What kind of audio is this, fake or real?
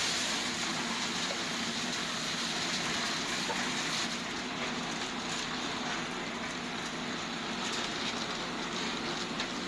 real